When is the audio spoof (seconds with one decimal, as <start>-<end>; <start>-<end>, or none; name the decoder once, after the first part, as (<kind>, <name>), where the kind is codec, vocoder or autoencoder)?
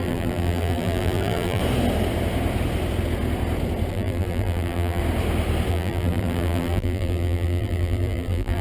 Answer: 0.0-1.6 (vocoder, BigVGAN v2); 3.9-5.0; 5.7-8.6